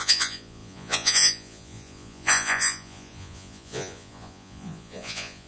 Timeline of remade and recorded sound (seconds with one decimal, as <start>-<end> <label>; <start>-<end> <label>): 0.0-5.5 remade